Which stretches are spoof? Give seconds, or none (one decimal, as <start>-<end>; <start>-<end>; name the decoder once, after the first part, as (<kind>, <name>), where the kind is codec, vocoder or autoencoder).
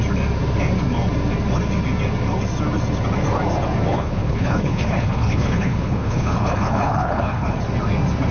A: 3.9-7.6 (codec, HILCodec)